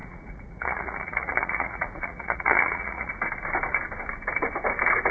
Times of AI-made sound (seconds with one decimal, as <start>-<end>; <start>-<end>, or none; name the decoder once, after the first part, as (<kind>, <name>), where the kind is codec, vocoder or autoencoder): 0.0-3.1 (vocoder, Vocos)

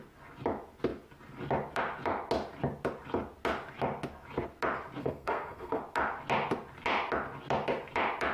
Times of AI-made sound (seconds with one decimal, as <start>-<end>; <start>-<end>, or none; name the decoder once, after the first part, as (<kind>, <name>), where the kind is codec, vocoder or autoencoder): 5.0-5.8 (codec, SNAC)